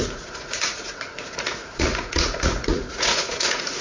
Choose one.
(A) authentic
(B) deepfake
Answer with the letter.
B